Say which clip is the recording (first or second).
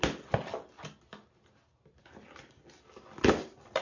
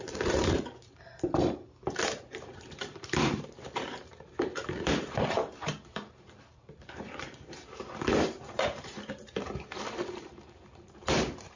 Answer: first